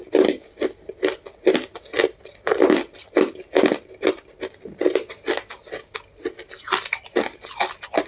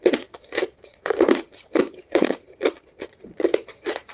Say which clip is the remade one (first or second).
second